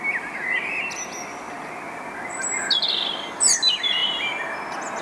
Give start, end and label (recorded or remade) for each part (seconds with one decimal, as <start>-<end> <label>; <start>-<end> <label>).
0.0-5.0 recorded